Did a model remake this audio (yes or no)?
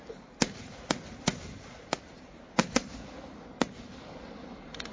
no